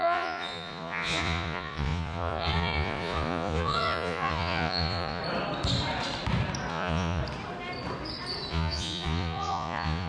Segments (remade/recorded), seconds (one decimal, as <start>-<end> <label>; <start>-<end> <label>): 0.0-5.2 remade; 5.2-6.7 recorded; 6.7-7.2 remade; 7.2-8.5 recorded; 8.5-10.1 remade